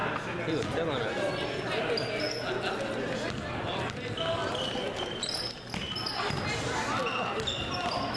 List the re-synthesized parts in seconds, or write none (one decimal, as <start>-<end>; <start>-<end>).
none